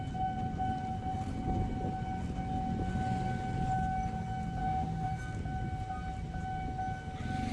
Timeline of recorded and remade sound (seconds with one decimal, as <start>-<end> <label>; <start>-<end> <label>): 0.0-4.6 recorded; 4.6-5.2 remade; 5.2-7.5 recorded